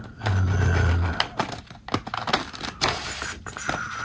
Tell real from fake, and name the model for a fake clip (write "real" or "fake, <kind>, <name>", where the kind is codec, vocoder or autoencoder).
real